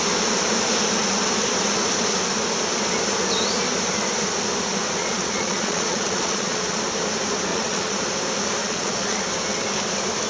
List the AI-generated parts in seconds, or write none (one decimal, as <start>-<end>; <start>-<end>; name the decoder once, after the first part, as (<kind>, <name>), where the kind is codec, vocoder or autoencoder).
5.0-6.8 (vocoder, Vocos); 7.5-8.0; 8.6-9.2